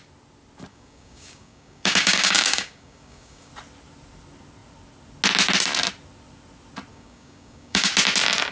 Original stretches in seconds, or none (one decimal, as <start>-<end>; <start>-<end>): 0.0-0.7; 3.5-6.9; 7.9-8.5